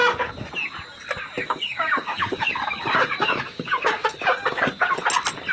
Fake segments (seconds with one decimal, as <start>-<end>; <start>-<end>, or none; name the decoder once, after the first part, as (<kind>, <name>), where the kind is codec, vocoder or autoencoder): 1.4-4.7 (codec, DAC)